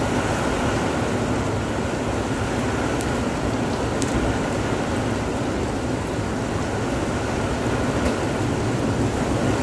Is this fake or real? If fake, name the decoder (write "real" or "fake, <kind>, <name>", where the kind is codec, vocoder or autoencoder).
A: real